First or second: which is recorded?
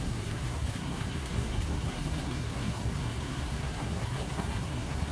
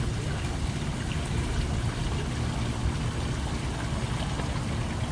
second